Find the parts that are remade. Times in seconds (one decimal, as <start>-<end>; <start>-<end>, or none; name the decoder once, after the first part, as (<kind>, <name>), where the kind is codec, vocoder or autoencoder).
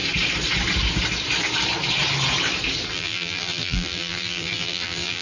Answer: 2.9-5.2 (vocoder, BigVGAN v2)